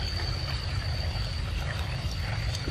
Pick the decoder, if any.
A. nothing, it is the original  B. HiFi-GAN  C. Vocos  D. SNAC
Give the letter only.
A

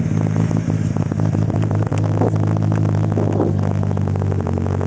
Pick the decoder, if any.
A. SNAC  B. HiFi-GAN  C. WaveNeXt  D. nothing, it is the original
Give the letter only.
D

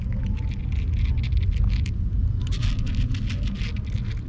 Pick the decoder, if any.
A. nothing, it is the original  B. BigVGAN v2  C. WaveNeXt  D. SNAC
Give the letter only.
A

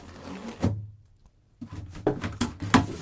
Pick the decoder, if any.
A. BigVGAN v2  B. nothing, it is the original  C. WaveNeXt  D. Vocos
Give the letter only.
B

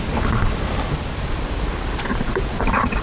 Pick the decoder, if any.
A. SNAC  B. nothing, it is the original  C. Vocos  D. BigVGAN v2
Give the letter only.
B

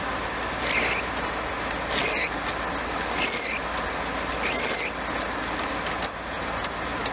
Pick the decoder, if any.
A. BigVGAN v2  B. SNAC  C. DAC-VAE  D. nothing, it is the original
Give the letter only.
D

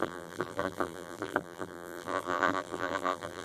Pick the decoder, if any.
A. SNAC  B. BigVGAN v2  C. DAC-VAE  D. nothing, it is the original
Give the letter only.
B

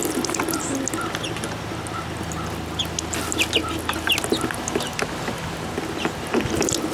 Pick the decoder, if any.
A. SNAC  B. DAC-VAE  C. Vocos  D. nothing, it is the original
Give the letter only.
D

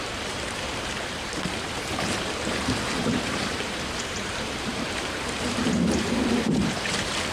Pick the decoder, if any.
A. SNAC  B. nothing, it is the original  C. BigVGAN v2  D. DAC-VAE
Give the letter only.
C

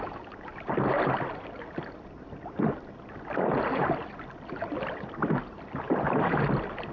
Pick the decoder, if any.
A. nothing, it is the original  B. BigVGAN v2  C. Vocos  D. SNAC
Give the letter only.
A